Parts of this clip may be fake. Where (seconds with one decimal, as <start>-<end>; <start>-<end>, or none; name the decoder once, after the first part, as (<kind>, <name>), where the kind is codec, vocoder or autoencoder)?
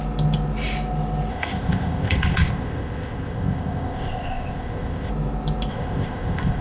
1.3-5.1 (codec, ZipCodec); 5.7-6.6